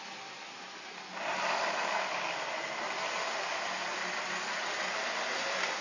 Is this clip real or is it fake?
real